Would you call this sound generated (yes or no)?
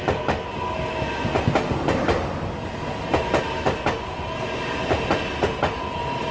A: no